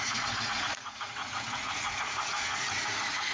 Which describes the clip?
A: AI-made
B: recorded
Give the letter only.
A